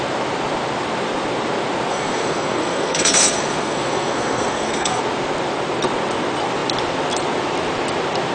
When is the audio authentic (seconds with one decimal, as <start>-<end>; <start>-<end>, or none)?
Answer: 0.0-1.9; 5.0-8.3